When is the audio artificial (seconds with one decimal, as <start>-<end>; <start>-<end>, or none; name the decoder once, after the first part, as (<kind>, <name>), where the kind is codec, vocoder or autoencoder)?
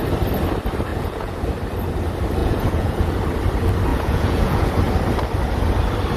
0.9-1.4 (vocoder, Vocos); 2.4-3.1; 3.9-4.7